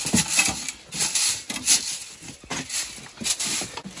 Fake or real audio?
real